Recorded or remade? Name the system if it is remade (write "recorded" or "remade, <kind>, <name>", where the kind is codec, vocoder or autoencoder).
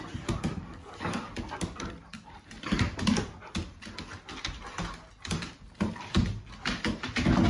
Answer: recorded